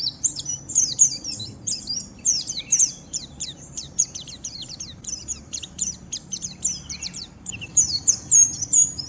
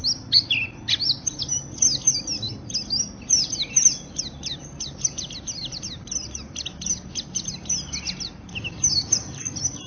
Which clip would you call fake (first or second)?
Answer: first